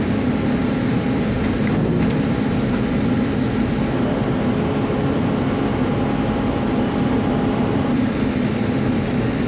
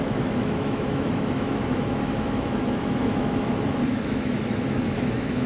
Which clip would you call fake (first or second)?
second